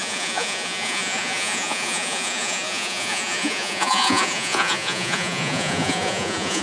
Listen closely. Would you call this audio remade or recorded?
remade